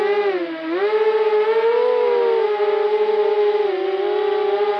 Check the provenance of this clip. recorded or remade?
recorded